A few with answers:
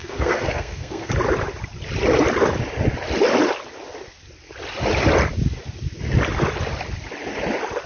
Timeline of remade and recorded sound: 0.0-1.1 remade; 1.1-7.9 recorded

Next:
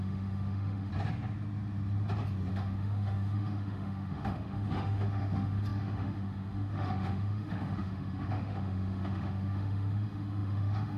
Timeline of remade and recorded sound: 0.0-0.9 remade; 0.9-2.5 recorded; 2.5-11.0 remade